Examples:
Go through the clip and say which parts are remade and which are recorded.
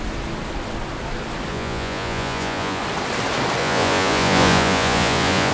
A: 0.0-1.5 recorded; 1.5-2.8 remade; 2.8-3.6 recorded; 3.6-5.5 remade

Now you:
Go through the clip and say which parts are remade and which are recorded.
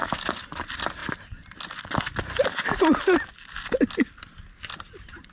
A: 0.0-0.6 remade; 0.6-5.3 recorded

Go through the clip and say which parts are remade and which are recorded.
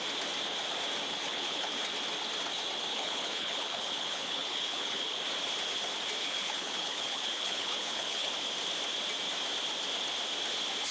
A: 0.0-1.1 recorded; 1.1-1.7 remade; 1.7-2.9 recorded; 2.9-5.2 remade; 5.2-6.2 recorded; 6.2-8.3 remade; 8.3-10.9 recorded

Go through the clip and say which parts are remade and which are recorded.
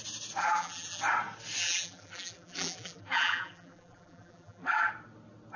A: 0.0-0.4 recorded; 0.4-1.0 remade; 1.0-1.6 recorded; 1.6-4.9 remade; 4.9-5.6 recorded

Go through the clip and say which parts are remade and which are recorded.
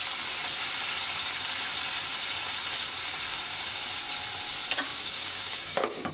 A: 0.0-4.9 recorded; 4.9-6.1 remade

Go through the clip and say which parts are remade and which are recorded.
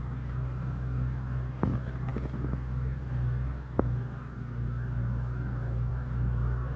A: 0.0-6.8 remade